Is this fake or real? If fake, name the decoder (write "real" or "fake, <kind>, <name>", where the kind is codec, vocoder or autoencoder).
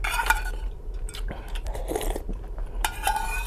fake, vocoder, BigVGAN v2